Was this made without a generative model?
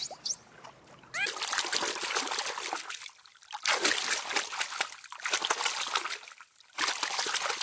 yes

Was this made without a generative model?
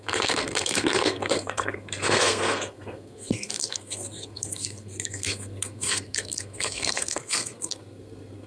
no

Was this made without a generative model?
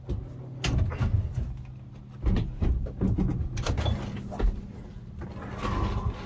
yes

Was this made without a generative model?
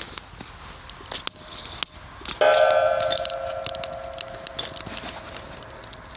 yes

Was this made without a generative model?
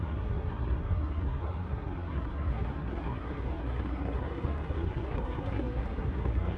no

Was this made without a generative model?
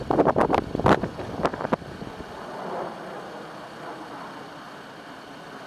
yes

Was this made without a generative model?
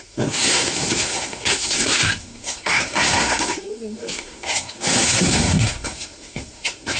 no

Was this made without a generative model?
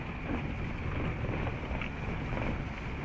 yes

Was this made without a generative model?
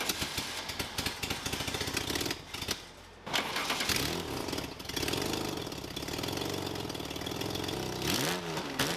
yes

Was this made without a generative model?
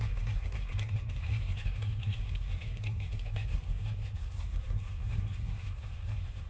no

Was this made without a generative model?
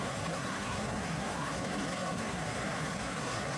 no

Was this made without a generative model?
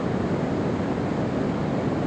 yes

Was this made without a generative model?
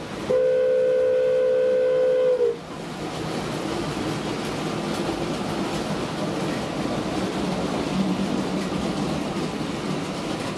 yes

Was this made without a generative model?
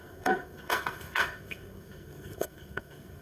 no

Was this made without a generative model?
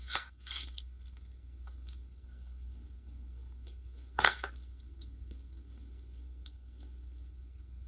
no